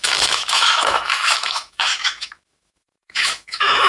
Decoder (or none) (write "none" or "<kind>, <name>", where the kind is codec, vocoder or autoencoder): autoencoder, DAC-VAE